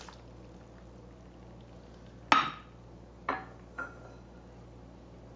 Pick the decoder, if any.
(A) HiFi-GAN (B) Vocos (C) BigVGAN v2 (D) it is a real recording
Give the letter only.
D